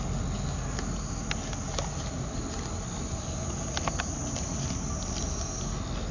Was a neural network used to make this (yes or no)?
no